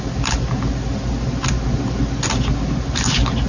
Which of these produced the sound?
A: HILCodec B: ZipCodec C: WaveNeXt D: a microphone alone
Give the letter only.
D